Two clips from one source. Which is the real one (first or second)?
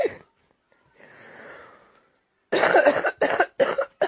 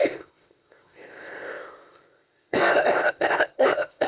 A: first